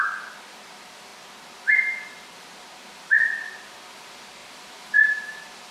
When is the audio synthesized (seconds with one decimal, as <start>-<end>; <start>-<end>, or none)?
none